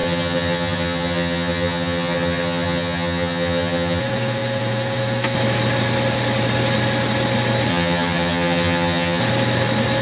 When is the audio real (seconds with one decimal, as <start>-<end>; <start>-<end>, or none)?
4.0-7.7; 9.2-10.0

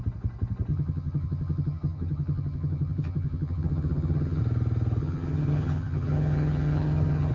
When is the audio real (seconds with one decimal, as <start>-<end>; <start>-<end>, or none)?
0.0-0.7; 4.4-5.0

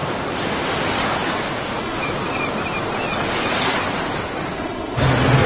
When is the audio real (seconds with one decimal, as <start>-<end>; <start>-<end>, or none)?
0.0-5.5

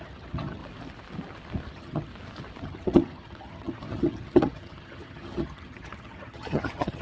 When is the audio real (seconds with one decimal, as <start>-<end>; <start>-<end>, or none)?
0.6-1.7; 2.1-2.6

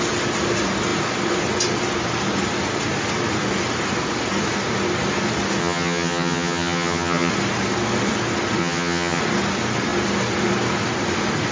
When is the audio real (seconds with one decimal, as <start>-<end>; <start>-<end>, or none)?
0.0-5.6; 7.3-8.6; 9.2-11.5

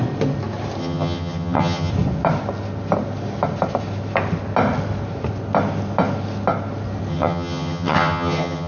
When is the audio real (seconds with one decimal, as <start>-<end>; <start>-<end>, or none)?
0.0-0.8; 1.9-7.1

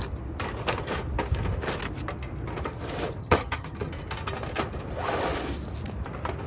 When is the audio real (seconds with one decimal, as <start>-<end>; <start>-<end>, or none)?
0.0-3.2; 3.9-6.5

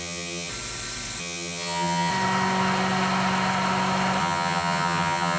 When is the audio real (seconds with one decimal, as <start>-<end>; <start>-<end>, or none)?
0.5-1.2; 2.1-4.2